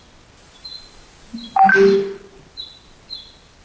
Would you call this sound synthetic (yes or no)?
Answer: no